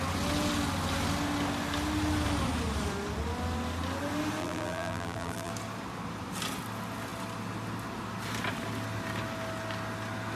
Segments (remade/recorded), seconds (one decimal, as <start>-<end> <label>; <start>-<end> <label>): 0.0-4.4 recorded; 4.4-5.5 remade; 5.5-10.4 recorded